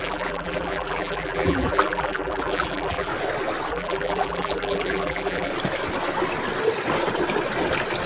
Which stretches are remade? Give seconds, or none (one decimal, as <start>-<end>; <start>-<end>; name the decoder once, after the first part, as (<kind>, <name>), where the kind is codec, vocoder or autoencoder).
0.0-3.1 (vocoder, BigVGAN v2); 3.7-5.5